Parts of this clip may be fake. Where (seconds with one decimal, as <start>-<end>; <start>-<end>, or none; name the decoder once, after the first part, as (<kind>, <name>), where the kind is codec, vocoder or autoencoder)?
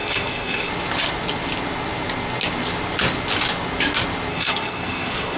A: 0.0-0.7 (codec, SNAC); 4.3-5.4